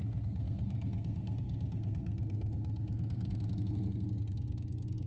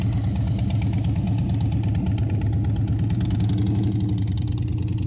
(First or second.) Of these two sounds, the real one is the second